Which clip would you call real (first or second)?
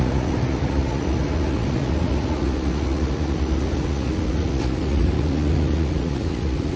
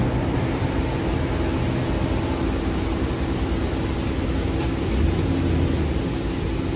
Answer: second